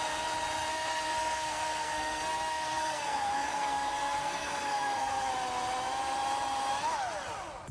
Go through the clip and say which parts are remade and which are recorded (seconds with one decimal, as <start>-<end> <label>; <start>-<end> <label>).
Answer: 0.0-0.7 recorded; 0.7-5.3 remade; 5.3-7.7 recorded